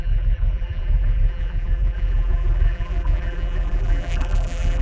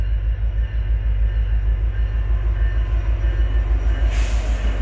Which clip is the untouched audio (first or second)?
second